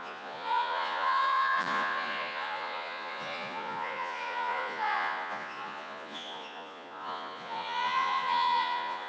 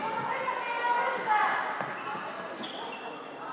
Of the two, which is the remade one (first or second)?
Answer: first